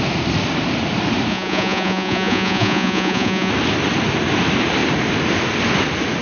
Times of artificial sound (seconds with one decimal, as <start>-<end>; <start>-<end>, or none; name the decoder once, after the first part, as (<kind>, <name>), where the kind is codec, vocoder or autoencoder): 1.3-3.5 (vocoder, Vocos)

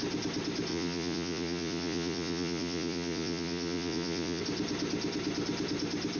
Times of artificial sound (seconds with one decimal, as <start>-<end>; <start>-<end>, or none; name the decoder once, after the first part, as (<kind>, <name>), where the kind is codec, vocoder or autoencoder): 0.7-4.4 (vocoder, Vocos)

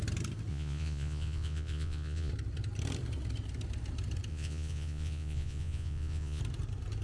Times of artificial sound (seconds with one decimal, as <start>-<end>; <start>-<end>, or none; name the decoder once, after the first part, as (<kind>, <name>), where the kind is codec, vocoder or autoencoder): 0.5-2.3 (vocoder, Vocos); 4.3-6.4